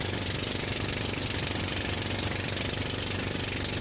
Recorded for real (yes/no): yes